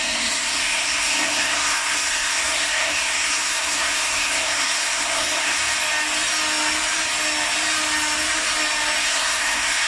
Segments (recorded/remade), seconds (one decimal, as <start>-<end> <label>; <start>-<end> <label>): 0.0-5.6 remade; 5.6-9.0 recorded; 9.0-9.9 remade